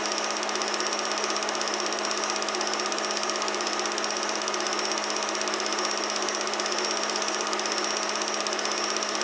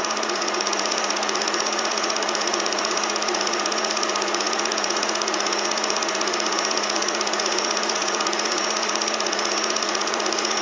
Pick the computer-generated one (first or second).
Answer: second